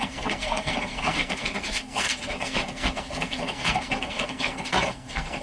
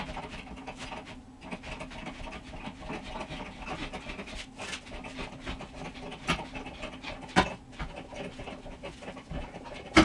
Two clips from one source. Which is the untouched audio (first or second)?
second